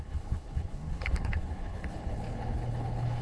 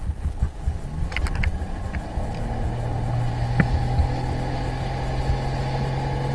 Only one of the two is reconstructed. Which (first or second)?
first